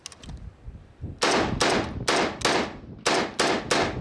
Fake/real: real